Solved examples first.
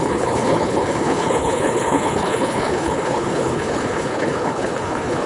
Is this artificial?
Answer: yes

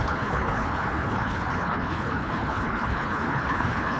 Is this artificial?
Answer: yes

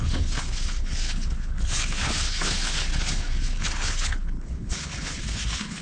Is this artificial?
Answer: yes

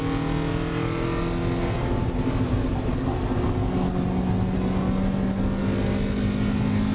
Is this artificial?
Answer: no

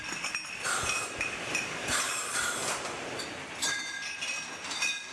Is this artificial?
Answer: no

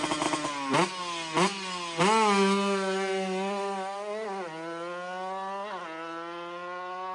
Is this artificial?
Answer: no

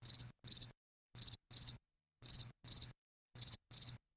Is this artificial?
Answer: yes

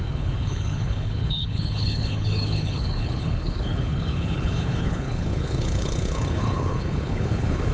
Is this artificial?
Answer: yes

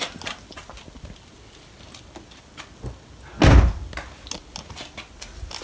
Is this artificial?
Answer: no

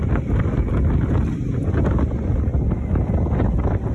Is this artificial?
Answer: no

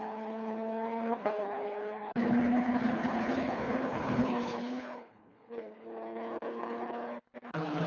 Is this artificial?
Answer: yes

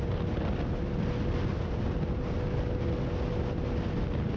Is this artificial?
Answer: no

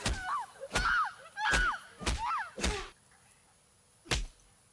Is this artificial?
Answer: no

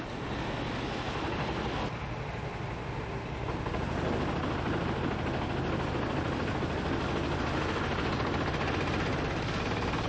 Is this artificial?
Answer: no